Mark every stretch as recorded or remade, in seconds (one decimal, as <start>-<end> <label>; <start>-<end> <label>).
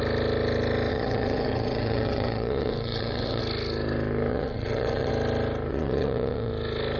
0.0-0.9 recorded; 0.9-3.4 remade; 3.4-4.3 recorded; 4.3-5.1 remade; 5.1-5.7 recorded; 5.7-6.5 remade; 6.5-7.0 recorded